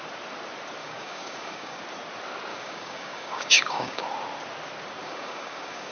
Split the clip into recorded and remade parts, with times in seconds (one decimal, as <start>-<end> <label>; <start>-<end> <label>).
0.0-0.8 recorded; 0.8-1.8 remade; 1.8-2.5 recorded; 2.5-4.0 remade; 4.0-5.0 recorded; 5.0-5.9 remade